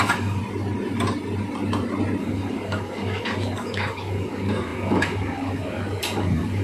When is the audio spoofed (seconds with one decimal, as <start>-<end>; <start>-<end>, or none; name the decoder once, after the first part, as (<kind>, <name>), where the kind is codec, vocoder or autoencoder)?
0.0-0.4 (codec, DAC); 2.2-6.6